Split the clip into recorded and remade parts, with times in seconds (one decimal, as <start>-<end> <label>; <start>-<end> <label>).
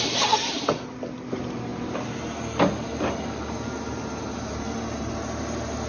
0.0-5.9 recorded